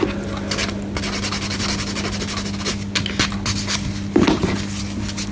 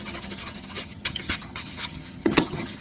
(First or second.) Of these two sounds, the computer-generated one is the second